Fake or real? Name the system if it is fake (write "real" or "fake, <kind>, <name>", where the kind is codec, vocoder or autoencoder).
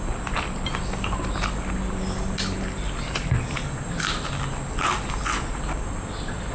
real